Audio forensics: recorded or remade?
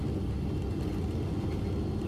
recorded